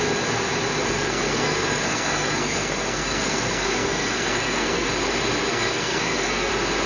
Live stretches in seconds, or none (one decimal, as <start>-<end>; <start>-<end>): 0.0-0.8; 4.9-5.5; 6.5-6.9